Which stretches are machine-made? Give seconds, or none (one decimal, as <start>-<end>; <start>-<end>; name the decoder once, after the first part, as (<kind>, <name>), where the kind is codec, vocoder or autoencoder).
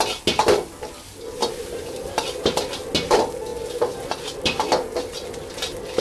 1.4-2.2 (vocoder, BigVGAN v2)